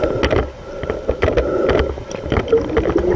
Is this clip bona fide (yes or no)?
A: yes